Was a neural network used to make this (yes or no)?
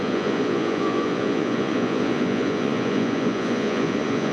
yes